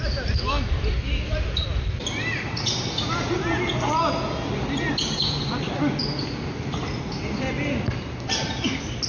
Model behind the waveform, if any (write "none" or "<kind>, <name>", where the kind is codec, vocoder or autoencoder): none